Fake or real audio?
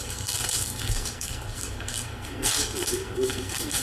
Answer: fake